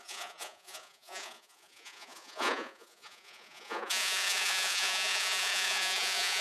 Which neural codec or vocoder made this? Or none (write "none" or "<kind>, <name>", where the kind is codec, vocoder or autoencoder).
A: vocoder, Vocos